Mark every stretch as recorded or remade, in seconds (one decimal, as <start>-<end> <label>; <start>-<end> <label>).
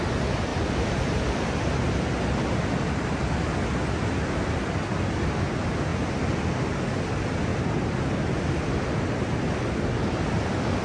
0.0-10.8 recorded